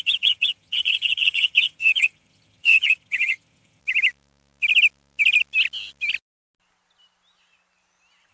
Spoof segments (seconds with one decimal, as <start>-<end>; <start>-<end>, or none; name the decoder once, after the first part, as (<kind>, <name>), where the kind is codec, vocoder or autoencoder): 0.0-3.8 (vocoder, HiFi-GAN)